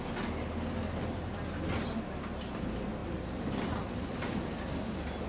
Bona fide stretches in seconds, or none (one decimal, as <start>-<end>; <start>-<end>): 0.0-5.3